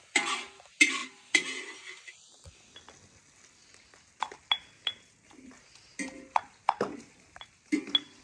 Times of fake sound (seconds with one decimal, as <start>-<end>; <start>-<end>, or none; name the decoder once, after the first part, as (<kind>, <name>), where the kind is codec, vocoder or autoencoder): none